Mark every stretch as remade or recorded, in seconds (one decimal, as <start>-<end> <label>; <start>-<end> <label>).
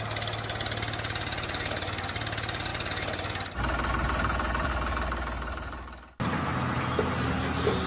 0.0-7.9 recorded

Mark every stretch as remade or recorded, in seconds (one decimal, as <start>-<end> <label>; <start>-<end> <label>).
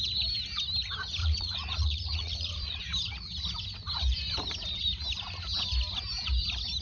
0.0-1.2 recorded; 1.2-2.8 remade; 2.8-6.8 recorded